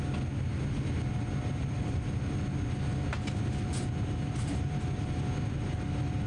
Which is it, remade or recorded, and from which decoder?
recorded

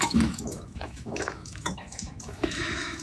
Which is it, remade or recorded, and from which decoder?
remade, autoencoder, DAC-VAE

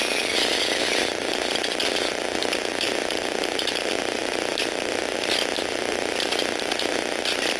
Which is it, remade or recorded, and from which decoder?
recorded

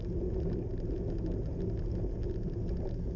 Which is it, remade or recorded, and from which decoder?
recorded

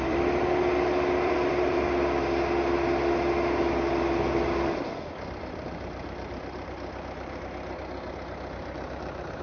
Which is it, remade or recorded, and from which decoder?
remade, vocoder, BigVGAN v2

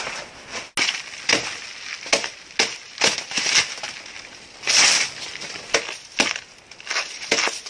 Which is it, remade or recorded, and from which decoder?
recorded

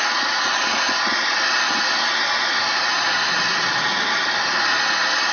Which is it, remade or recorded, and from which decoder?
recorded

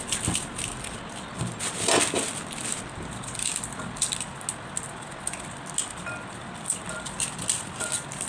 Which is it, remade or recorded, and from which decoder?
recorded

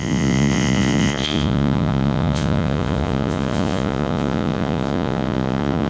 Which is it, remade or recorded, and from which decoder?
remade, vocoder, Vocos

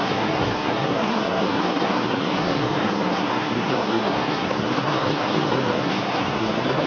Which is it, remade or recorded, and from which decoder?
remade, codec, SNAC